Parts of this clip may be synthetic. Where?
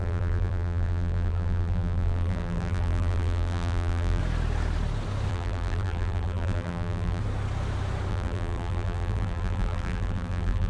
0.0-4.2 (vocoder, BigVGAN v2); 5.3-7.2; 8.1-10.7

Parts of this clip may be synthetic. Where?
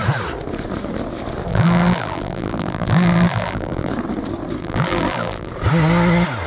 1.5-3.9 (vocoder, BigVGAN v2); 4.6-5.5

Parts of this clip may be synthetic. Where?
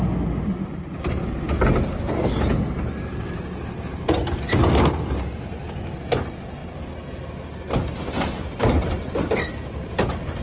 none